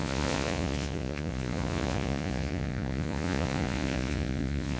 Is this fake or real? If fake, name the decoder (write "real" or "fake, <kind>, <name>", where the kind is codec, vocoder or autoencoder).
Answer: fake, vocoder, Vocos